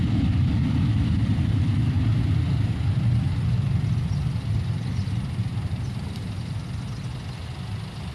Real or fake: real